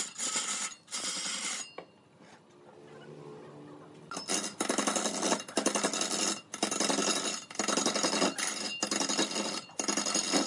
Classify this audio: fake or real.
real